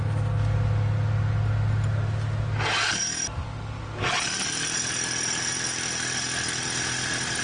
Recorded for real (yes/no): yes